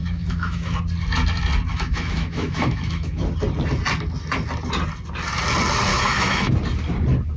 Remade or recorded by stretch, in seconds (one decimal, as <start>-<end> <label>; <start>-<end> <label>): 0.0-0.8 remade; 0.8-1.7 recorded; 1.7-3.2 remade; 3.2-5.9 recorded; 5.9-6.5 remade; 6.5-7.4 recorded